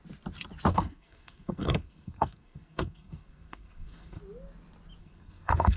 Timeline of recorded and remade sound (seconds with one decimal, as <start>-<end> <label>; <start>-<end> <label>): 0.0-0.7 recorded; 0.7-4.2 remade; 4.2-5.0 recorded; 5.0-5.8 remade